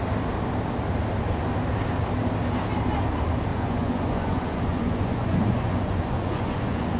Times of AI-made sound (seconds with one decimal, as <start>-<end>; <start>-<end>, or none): 3.5-7.0